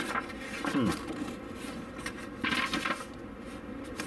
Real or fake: real